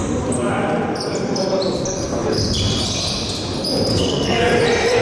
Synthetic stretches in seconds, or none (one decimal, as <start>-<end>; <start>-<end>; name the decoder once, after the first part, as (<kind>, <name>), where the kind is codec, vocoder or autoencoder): 3.9-4.5 (codec, SNAC)